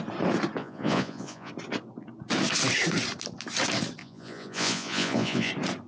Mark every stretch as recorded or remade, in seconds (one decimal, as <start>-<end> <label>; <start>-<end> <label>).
0.0-0.6 recorded; 0.6-1.5 remade; 1.5-4.0 recorded; 4.0-5.5 remade; 5.5-5.9 recorded